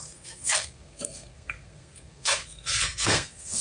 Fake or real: fake